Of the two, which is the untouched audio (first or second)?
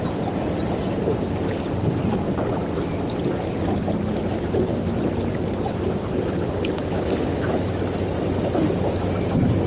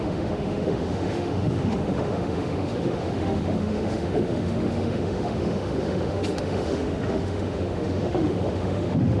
first